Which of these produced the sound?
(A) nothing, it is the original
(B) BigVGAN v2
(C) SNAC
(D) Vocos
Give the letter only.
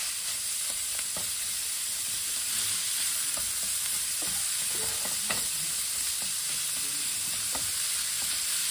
B